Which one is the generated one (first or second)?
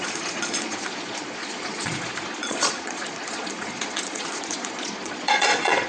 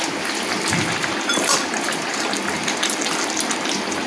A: first